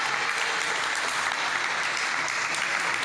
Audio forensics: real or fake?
fake